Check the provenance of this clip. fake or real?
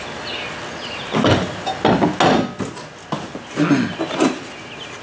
real